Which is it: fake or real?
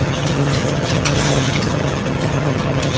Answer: fake